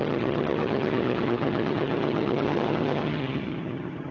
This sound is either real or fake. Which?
fake